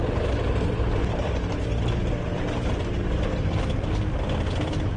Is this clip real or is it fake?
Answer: real